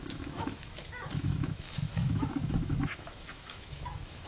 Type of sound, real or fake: fake